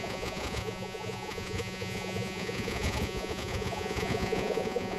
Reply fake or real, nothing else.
fake